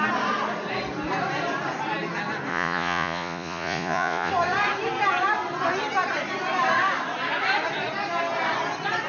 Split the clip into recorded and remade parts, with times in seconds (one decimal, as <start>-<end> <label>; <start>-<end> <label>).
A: 0.0-2.5 recorded; 2.5-4.3 remade; 4.3-9.1 recorded